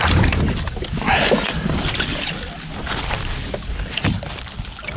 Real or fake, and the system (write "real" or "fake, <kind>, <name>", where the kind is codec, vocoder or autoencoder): real